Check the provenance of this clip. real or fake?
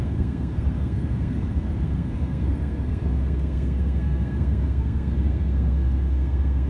fake